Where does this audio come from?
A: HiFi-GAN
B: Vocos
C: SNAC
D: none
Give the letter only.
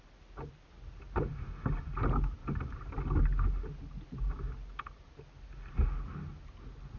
D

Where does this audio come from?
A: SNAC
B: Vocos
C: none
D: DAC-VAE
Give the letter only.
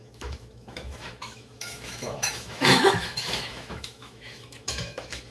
D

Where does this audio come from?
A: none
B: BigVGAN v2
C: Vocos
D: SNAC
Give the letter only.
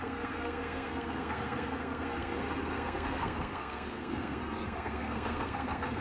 D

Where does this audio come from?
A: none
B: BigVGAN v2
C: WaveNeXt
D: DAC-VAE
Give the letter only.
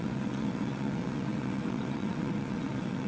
C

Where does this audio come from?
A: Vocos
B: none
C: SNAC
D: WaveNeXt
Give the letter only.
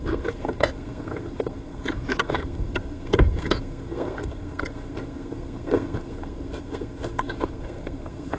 C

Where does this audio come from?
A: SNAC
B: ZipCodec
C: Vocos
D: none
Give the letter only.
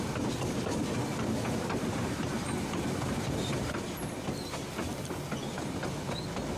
D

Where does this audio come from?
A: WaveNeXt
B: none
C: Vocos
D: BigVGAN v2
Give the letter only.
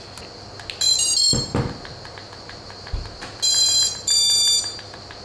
B